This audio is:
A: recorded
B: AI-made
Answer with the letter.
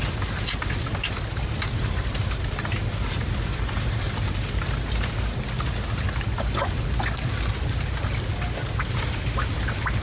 A